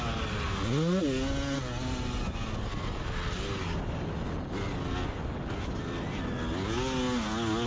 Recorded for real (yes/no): yes